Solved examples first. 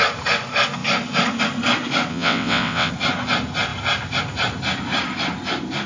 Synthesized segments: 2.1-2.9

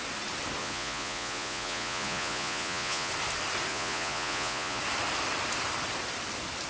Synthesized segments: 0.6-3.1; 3.7-4.8